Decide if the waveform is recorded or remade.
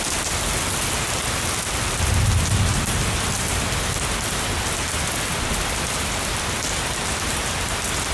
recorded